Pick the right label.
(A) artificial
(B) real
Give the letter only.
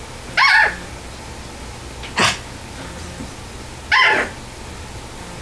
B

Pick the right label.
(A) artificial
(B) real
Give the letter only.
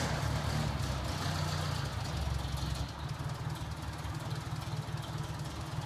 B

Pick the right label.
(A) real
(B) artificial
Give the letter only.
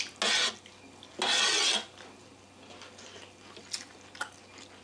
A